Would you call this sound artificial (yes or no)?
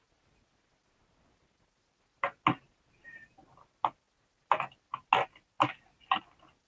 no